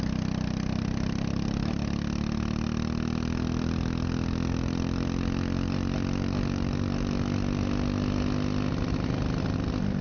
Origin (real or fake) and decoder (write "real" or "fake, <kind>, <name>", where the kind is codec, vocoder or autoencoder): real